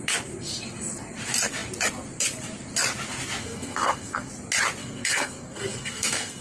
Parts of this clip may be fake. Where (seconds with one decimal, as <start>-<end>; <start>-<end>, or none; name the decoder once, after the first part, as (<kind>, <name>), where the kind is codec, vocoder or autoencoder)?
3.4-4.3 (codec, SNAC); 4.8-6.4

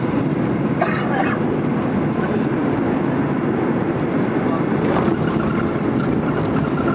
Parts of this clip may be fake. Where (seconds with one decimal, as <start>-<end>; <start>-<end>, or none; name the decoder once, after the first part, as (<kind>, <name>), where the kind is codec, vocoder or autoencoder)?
none

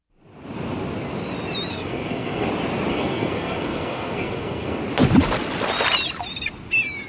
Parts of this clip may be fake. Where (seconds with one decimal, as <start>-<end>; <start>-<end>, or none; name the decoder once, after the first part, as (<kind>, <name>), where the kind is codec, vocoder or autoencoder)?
1.7-2.5 (codec, SNAC); 2.9-4.8

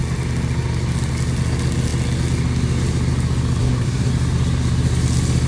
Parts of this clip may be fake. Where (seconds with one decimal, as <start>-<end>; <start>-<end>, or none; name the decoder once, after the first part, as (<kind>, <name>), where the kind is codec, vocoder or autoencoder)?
3.6-4.1 (codec, SNAC)

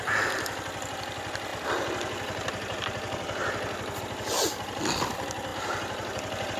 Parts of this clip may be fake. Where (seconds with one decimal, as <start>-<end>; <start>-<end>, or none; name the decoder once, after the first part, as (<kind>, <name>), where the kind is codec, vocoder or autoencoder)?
none